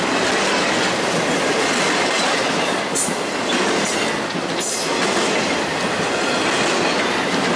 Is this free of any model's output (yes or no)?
yes